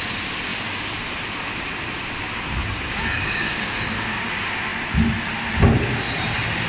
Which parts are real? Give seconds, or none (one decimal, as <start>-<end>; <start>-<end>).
0.0-2.6; 4.3-6.7